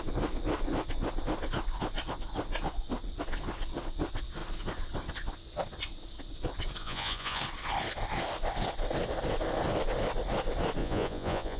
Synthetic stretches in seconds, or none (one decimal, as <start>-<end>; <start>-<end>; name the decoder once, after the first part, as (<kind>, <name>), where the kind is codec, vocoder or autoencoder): 6.8-7.4 (vocoder, Vocos); 10.8-11.6

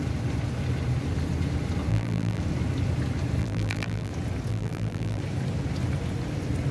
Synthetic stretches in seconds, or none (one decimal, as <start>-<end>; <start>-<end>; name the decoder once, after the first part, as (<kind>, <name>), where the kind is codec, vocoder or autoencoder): 1.9-2.4 (vocoder, BigVGAN v2); 3.4-4.1; 4.5-5.2